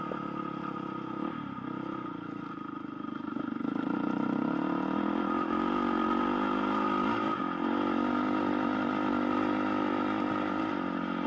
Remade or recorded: recorded